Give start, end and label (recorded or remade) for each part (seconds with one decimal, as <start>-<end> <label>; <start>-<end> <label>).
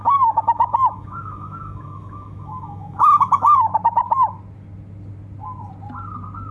0.0-3.7 remade; 3.7-6.5 recorded